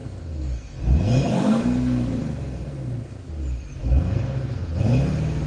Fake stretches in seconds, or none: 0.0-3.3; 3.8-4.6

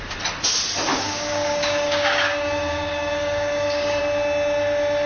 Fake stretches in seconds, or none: 0.9-4.0

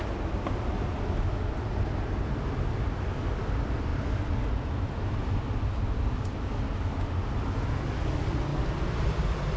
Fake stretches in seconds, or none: none

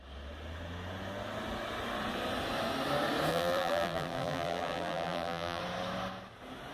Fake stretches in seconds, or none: 3.3-5.6

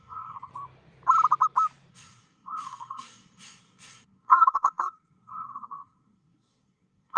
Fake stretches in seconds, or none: 0.0-0.5; 1.9-7.2

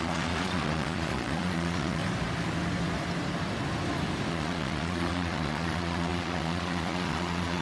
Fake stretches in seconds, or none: 0.0-2.0; 4.3-7.6

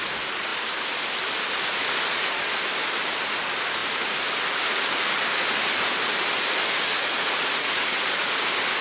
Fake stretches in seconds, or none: 7.0-8.4